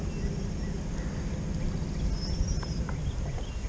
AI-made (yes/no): no